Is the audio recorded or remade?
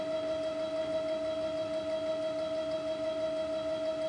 recorded